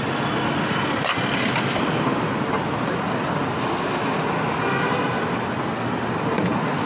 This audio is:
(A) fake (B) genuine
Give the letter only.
B